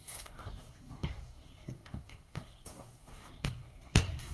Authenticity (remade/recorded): remade